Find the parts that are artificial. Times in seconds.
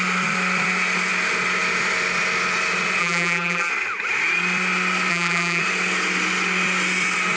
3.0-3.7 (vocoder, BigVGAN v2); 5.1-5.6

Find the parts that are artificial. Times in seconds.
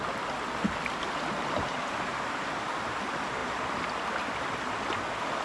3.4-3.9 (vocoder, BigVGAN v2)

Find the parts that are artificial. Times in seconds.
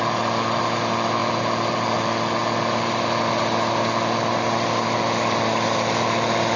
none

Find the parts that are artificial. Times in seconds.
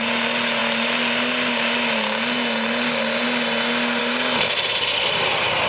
none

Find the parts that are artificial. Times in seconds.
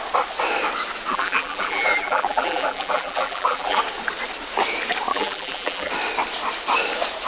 1.1-3.8 (vocoder, BigVGAN v2); 5.1-5.9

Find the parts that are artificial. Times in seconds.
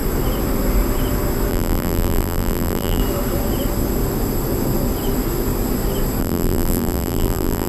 1.5-3.0 (vocoder, BigVGAN v2); 6.2-7.7